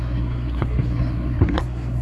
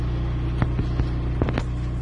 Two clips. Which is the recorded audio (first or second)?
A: second